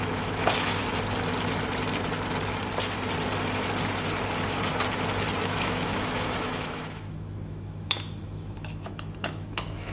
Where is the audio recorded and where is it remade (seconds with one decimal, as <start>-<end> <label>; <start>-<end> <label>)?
0.0-0.8 remade; 0.8-5.4 recorded; 5.4-9.9 remade